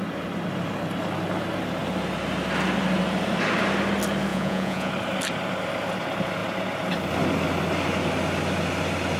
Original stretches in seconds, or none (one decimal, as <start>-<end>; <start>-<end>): 0.0-4.3; 4.9-9.2